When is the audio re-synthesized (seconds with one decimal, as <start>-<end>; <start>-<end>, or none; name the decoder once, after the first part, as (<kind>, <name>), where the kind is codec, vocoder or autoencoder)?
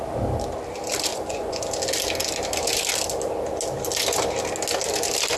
1.1-1.6 (vocoder, Vocos)